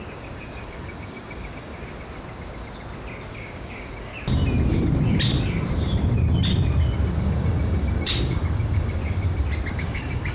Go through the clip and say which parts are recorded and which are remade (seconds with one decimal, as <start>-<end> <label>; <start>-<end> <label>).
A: 0.0-1.7 remade; 1.7-3.3 recorded; 3.3-4.1 remade; 4.1-7.2 recorded; 7.2-9.0 remade; 9.0-9.7 recorded; 9.7-10.3 remade